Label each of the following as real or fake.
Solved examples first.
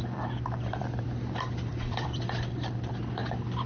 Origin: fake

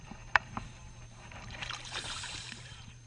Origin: fake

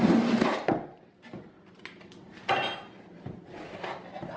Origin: real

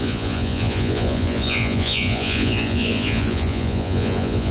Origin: fake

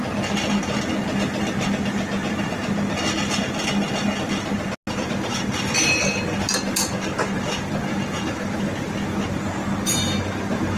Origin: real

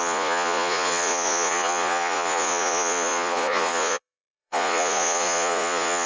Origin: fake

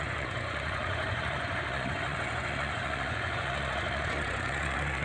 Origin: fake